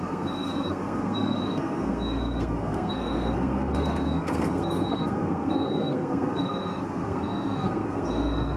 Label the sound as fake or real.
fake